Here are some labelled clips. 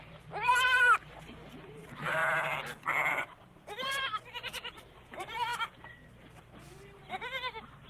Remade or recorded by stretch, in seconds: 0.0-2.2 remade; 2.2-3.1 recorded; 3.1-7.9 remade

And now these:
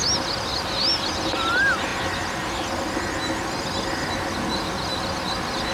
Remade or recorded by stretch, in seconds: 0.0-5.7 recorded

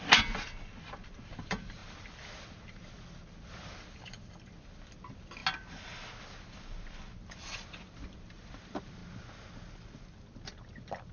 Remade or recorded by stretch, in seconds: 0.0-5.4 remade; 5.4-6.2 recorded; 6.2-9.0 remade; 9.0-9.9 recorded; 9.9-11.1 remade

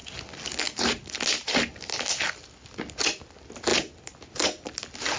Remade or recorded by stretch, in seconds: 0.0-5.2 recorded